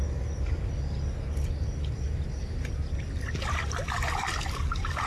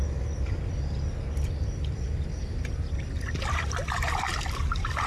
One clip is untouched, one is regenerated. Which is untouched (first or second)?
first